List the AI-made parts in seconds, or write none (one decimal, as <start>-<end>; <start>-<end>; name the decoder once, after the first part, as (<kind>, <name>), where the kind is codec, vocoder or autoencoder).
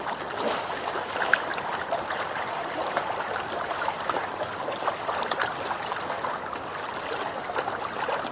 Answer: 1.5-4.0 (vocoder, BigVGAN v2)